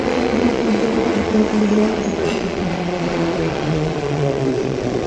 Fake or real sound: fake